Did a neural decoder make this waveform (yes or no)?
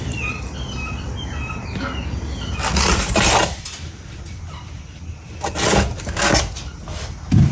no